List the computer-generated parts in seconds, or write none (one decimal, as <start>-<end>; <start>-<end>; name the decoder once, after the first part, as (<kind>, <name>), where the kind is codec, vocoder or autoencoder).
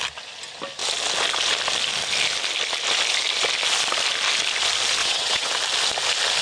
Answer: 5.0-5.5 (vocoder, WaveNeXt)